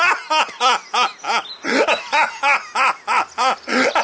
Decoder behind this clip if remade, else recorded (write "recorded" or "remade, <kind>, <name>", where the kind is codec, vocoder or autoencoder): recorded